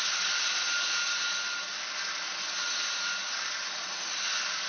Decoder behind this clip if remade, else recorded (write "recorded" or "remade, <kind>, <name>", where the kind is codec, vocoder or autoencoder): recorded